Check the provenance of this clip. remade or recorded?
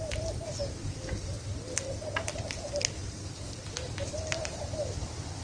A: remade